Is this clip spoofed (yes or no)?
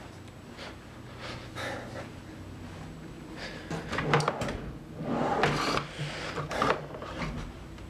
no